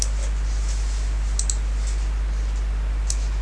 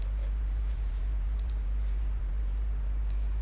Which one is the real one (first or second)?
first